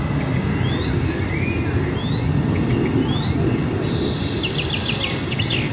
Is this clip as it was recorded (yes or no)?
yes